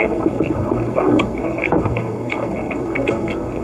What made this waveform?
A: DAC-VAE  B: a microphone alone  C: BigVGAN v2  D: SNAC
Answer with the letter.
D